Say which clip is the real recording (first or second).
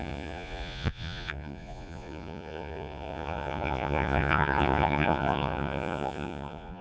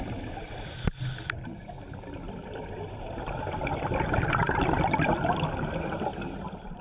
second